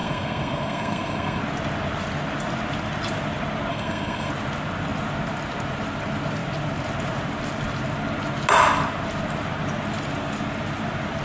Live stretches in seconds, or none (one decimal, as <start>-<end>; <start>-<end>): 1.4-3.7; 4.3-11.2